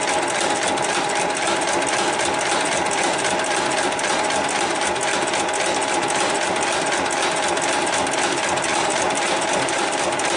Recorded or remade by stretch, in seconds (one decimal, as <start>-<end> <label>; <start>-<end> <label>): 0.0-8.7 recorded; 8.7-9.9 remade; 9.9-10.4 recorded